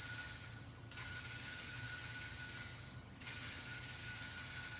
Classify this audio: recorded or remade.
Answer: remade